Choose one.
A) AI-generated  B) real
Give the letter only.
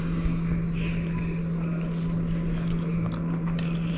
B